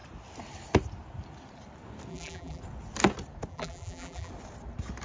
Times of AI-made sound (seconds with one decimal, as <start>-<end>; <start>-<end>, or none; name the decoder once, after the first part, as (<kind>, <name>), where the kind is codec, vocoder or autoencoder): 2.1-2.6 (vocoder, BigVGAN v2); 3.5-4.3